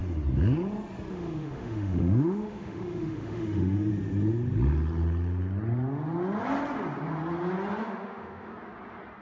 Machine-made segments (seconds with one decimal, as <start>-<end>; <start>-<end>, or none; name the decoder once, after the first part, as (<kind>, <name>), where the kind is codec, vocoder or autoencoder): 1.1-3.9 (autoencoder, DAC-VAE); 7.8-8.5